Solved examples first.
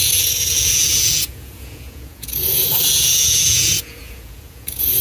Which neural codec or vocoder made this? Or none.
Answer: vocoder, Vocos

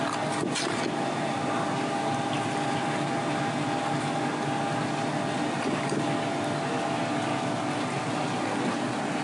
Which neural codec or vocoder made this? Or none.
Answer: none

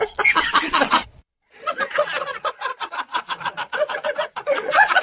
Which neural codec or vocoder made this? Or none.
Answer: vocoder, Vocos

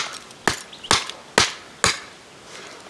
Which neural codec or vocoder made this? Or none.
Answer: none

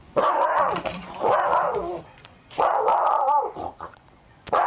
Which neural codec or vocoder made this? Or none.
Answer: vocoder, Vocos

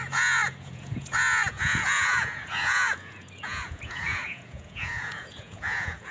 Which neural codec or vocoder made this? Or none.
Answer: vocoder, Vocos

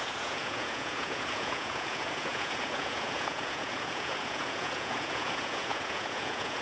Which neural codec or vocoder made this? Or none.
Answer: vocoder, Vocos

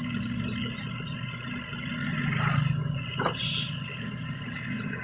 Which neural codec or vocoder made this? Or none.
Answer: none